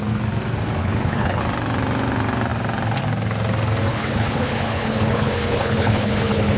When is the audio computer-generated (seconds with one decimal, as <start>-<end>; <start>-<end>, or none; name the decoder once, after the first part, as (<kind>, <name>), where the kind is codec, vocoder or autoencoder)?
0.8-1.4 (codec, HILCodec); 3.9-6.6